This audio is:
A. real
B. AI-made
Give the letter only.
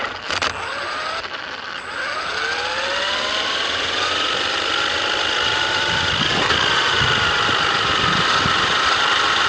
A